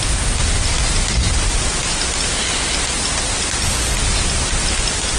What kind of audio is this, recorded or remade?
recorded